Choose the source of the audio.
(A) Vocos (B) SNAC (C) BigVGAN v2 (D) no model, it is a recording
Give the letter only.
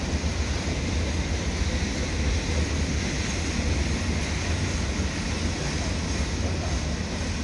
D